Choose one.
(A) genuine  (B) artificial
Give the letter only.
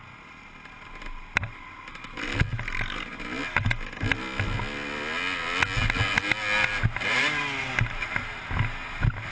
A